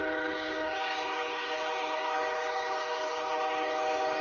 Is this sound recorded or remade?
remade